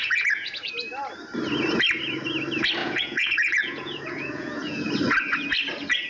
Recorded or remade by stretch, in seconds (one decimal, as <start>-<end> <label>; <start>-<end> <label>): 0.0-0.7 remade; 0.7-2.8 recorded; 2.8-4.9 remade; 4.9-6.1 recorded